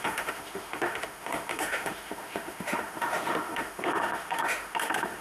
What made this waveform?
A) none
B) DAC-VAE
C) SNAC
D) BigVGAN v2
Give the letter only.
B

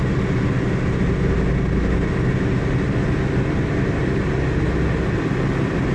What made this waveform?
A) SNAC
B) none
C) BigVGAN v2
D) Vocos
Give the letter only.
B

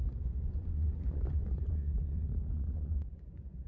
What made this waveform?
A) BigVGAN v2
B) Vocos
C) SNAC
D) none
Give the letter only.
B